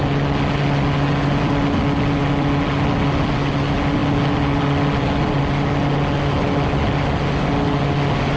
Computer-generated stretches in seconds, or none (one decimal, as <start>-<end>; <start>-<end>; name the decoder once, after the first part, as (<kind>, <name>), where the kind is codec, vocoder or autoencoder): none

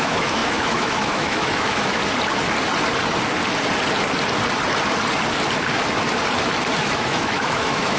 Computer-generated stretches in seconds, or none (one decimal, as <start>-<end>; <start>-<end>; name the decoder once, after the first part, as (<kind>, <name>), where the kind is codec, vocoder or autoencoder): 0.0-2.0 (autoencoder, DAC-VAE); 6.8-8.0

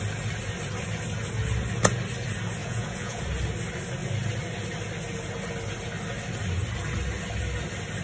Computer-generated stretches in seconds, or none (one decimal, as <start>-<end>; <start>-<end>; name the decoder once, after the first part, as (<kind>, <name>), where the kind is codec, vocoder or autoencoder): 2.6-3.2 (vocoder, Vocos)

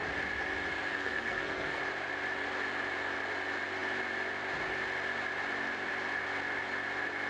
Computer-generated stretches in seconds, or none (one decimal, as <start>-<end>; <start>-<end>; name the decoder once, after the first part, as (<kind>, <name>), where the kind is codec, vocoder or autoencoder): 0.9-1.8 (codec, SNAC)

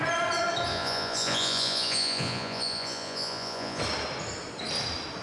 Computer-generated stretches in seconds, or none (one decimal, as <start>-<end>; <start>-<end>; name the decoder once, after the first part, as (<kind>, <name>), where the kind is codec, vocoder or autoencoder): 0.7-3.8 (vocoder, Vocos)

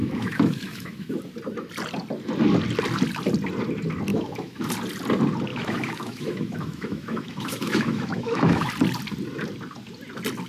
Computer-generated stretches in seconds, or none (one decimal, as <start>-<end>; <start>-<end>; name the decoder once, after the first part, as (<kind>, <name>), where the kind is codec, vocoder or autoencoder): 0.0-1.2 (autoencoder, DAC-VAE); 4.1-4.7; 5.5-8.7